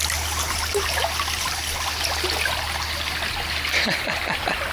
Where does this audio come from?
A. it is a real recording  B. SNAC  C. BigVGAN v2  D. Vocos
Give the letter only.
A